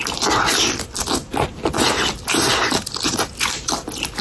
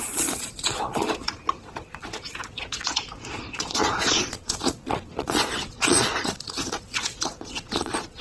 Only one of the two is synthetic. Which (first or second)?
second